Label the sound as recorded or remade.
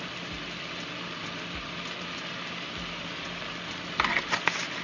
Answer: recorded